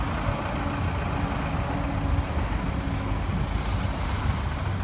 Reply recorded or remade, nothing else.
recorded